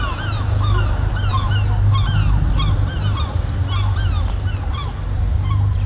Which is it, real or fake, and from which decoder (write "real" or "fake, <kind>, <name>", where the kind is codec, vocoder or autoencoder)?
real